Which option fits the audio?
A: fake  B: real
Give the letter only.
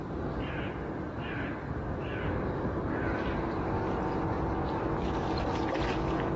B